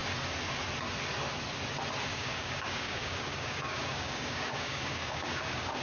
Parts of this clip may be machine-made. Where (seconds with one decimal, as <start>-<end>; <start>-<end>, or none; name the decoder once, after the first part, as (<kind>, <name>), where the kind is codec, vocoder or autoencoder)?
2.1-5.8 (codec, DAC)